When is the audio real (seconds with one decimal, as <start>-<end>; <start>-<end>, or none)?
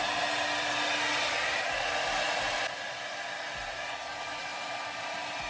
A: 0.0-5.5